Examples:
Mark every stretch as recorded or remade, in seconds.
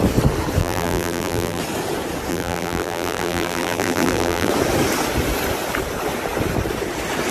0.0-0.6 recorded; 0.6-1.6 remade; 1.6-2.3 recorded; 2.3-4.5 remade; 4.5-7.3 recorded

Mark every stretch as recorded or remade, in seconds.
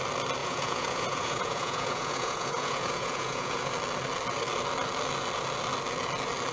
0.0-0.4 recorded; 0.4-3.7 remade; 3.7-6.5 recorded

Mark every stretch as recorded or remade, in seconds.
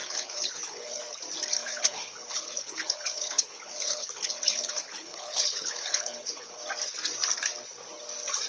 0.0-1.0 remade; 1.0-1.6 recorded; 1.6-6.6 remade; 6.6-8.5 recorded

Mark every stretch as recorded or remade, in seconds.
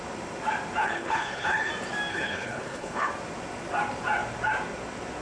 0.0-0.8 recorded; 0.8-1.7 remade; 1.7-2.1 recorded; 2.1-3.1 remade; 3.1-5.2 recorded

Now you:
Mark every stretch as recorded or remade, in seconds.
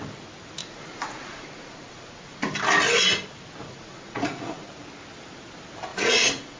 0.0-0.6 recorded; 0.6-2.5 remade; 2.5-3.6 recorded; 3.6-4.7 remade; 4.7-5.9 recorded; 5.9-6.6 remade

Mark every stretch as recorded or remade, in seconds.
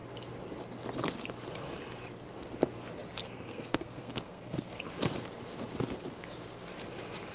0.0-3.2 recorded; 3.2-4.9 remade; 4.9-7.3 recorded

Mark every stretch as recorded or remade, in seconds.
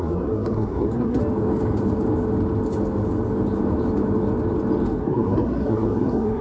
0.0-1.2 remade; 1.2-5.0 recorded; 5.0-6.4 remade